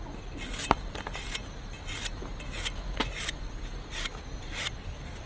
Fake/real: real